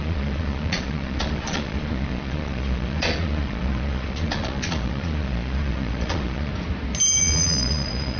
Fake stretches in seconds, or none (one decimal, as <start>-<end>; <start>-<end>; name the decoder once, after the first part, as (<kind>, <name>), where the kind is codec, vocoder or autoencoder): 0.0-6.5 (vocoder, Vocos); 7.2-8.2